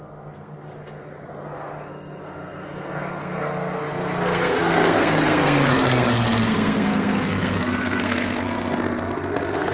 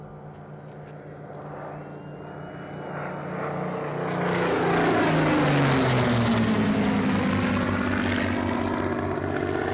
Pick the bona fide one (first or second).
second